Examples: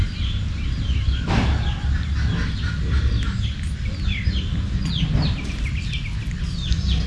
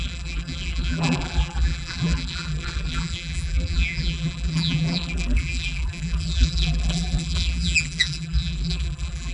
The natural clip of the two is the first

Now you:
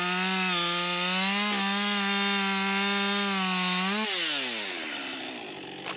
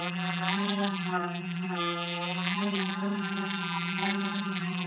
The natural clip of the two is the first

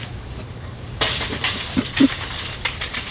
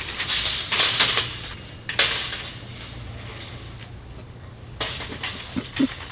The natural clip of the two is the second